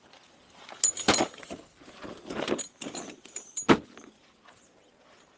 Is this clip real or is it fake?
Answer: real